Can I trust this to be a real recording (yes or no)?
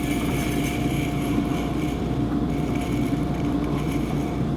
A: no